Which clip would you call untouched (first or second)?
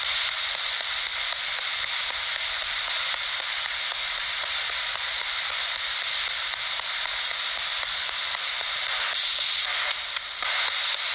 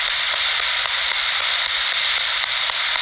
first